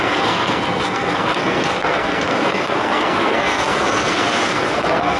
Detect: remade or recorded remade